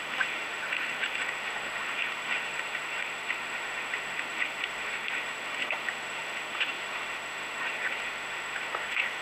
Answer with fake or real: fake